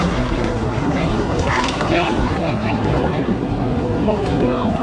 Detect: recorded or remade remade